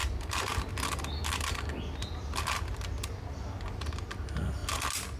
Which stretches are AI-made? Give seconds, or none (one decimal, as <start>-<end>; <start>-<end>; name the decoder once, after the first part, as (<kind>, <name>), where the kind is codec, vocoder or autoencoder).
0.0-0.7 (vocoder, BigVGAN v2)